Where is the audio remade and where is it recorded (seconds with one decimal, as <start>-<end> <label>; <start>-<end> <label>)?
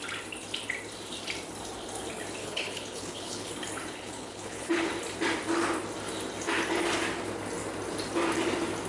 0.0-2.4 recorded; 2.4-3.5 remade; 3.5-3.9 recorded; 3.9-4.9 remade; 4.9-8.9 recorded